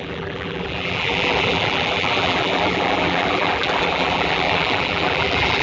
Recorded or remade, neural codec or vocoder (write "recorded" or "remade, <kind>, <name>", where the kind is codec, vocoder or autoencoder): remade, vocoder, BigVGAN v2